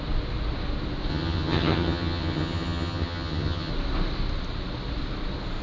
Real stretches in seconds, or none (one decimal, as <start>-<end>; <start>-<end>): 0.0-1.1; 3.7-5.6